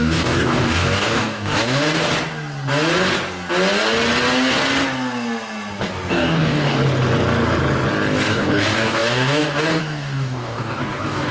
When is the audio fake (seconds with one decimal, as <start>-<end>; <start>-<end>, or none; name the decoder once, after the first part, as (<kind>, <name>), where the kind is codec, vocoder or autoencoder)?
0.0-2.1 (codec, DAC); 6.1-6.8; 8.3-11.3